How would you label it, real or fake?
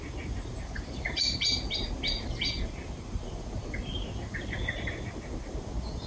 real